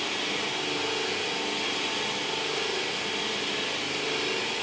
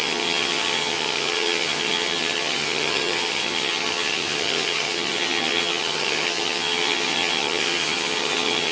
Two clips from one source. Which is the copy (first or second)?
second